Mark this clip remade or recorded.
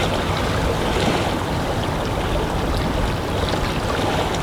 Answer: recorded